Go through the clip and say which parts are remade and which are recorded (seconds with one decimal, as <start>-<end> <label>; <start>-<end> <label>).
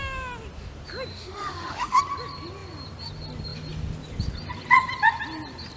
0.0-1.1 recorded; 1.1-2.0 remade; 2.0-5.8 recorded